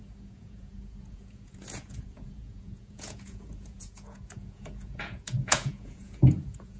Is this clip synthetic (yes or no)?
yes